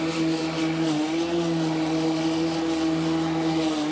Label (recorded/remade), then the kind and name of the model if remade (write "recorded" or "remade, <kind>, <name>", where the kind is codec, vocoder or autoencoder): recorded